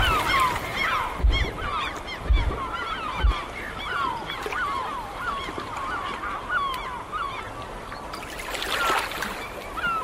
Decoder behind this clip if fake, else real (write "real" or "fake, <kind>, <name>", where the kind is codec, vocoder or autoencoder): real